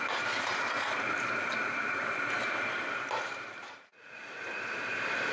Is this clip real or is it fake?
fake